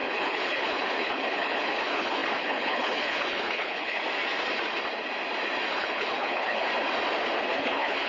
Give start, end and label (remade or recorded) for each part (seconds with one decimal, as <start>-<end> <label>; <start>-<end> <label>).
0.0-4.0 remade; 4.0-5.7 recorded; 5.7-6.6 remade; 6.6-7.5 recorded; 7.5-8.1 remade